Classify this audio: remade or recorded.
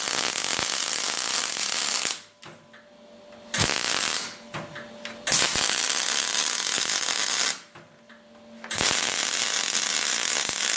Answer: recorded